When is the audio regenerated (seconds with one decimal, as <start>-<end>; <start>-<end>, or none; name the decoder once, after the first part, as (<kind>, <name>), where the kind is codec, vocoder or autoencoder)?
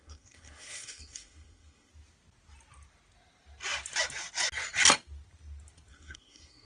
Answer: 0.0-1.9 (codec, SNAC); 5.9-6.6